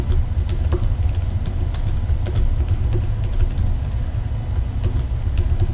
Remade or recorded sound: recorded